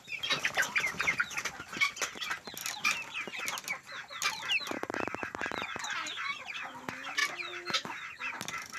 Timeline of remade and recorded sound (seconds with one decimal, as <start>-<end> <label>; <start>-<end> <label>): 0.0-8.8 recorded